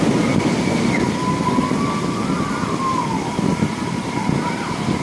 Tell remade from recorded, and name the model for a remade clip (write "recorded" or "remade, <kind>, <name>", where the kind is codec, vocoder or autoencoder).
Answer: recorded